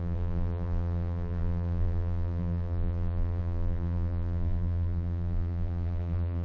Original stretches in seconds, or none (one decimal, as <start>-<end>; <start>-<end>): none